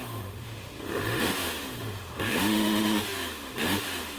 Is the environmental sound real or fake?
fake